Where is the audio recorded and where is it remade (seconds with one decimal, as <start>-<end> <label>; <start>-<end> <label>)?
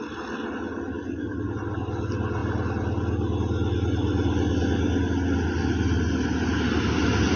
0.0-7.4 recorded